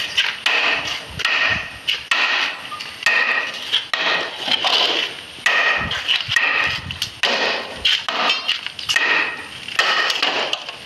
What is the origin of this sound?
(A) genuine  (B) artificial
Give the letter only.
A